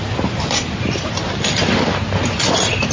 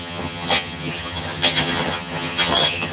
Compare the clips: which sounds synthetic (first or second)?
second